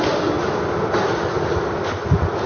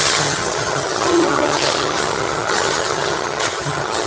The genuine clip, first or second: first